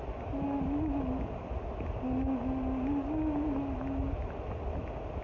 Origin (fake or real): real